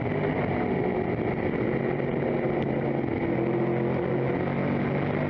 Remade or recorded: recorded